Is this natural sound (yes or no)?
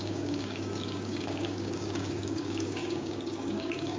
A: no